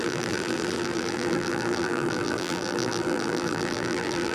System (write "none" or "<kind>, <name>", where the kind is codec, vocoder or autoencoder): vocoder, BigVGAN v2